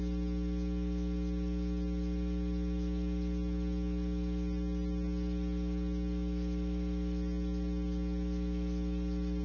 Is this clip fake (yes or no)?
no